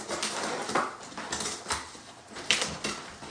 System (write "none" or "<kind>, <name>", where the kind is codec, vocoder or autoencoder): none